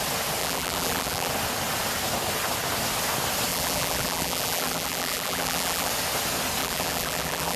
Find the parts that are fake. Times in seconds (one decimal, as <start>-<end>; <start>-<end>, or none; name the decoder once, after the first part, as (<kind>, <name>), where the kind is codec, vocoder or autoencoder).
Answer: 0.4-1.3 (vocoder, BigVGAN v2); 3.5-5.9; 6.6-7.6